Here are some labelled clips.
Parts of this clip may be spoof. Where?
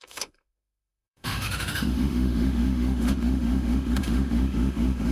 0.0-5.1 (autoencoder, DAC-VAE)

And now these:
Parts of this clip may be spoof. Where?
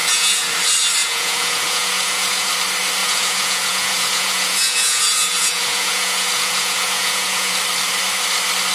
0.0-0.5 (vocoder, Vocos); 1.0-2.5; 3.0-7.5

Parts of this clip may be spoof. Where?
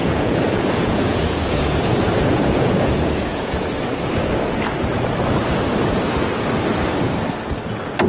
0.0-3.7 (vocoder, Vocos)